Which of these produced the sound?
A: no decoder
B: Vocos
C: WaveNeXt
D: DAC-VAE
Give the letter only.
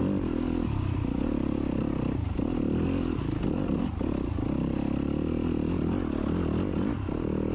A